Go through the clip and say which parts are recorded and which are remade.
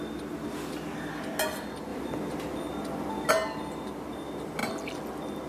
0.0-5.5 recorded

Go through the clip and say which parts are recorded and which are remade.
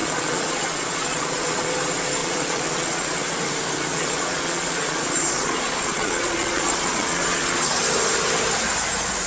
0.0-1.7 remade; 1.7-2.2 recorded; 2.2-3.1 remade; 3.1-3.9 recorded; 3.9-7.8 remade; 7.8-9.3 recorded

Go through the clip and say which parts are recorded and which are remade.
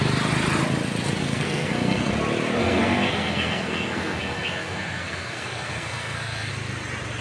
0.0-1.2 recorded; 1.2-2.1 remade; 2.1-2.6 recorded; 2.6-6.5 remade; 6.5-7.2 recorded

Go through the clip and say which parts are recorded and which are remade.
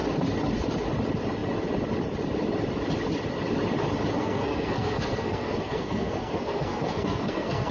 0.0-4.2 recorded; 4.2-7.7 remade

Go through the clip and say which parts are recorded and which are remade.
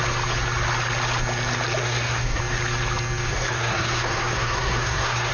0.0-1.8 recorded; 1.8-2.4 remade; 2.4-3.3 recorded; 3.3-5.3 remade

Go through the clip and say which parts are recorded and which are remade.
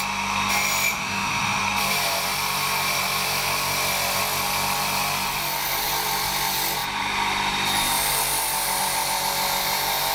0.0-0.9 recorded; 0.9-1.6 remade; 1.6-10.1 recorded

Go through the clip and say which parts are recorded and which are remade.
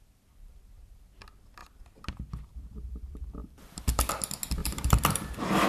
0.0-3.4 recorded; 3.4-4.1 remade; 4.1-4.6 recorded; 4.6-5.3 remade; 5.3-5.7 recorded